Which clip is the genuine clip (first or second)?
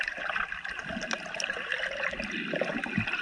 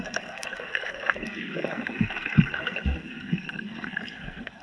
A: first